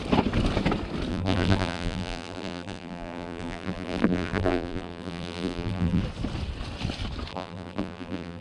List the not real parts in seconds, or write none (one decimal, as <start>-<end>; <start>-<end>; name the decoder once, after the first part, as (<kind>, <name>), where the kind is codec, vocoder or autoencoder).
1.1-6.0 (vocoder, BigVGAN v2); 7.3-8.4